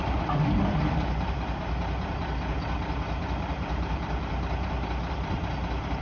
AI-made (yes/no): yes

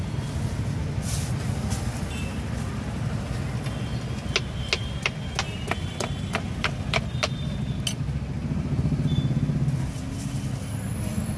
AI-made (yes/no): no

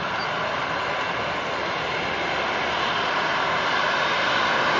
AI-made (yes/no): no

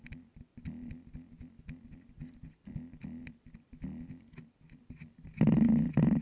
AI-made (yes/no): no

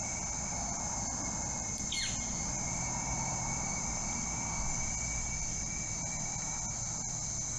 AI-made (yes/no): no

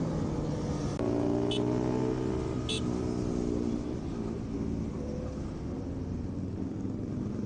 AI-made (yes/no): no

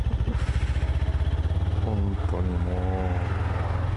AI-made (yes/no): no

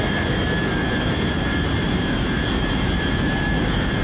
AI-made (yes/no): yes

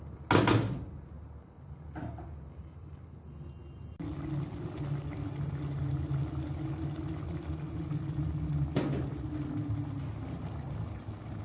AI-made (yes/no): no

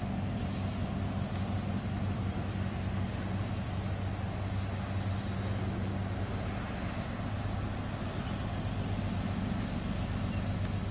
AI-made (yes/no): no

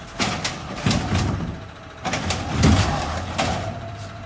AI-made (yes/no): yes